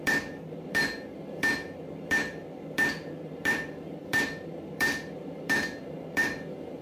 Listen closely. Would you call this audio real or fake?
fake